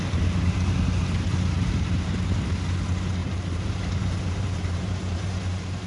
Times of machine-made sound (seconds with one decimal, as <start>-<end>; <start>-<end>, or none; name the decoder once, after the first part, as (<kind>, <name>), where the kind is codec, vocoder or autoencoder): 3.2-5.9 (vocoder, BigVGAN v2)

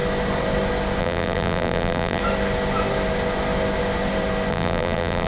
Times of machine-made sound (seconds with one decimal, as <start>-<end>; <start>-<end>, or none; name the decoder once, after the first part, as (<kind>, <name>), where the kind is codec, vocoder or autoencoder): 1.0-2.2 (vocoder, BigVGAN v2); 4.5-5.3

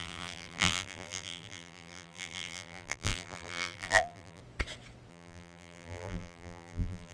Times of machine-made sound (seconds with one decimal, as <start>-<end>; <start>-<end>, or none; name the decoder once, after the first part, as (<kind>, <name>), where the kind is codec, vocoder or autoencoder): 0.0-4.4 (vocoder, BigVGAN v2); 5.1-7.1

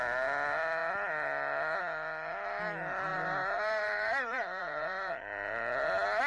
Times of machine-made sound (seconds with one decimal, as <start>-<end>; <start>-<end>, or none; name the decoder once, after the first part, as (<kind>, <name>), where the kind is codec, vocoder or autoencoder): 3.1-5.1 (vocoder, BigVGAN v2)

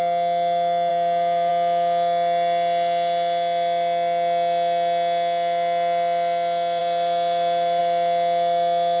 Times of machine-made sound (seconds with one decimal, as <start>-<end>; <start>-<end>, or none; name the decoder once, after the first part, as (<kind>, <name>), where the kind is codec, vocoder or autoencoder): 0.9-1.5 (vocoder, BigVGAN v2); 6.8-7.8

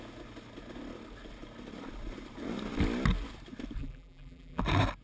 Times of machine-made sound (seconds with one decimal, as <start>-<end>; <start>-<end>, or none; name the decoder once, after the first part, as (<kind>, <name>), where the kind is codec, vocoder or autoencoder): 3.8-4.6 (vocoder, BigVGAN v2)